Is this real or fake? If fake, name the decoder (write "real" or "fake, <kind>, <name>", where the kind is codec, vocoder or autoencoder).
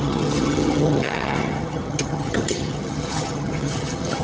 fake, vocoder, HiFi-GAN